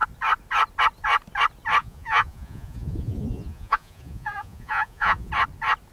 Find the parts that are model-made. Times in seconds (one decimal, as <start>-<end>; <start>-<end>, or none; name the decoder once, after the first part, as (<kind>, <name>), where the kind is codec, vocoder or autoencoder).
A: 1.8-5.3 (vocoder, Vocos)